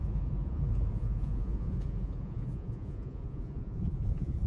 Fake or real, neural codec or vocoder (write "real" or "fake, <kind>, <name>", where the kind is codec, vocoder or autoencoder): fake, vocoder, Vocos